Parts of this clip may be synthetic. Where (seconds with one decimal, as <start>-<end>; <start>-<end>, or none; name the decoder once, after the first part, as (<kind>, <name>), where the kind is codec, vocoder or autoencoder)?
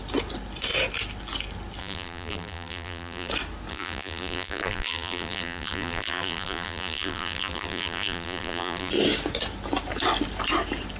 1.8-3.3 (vocoder, BigVGAN v2); 3.7-8.9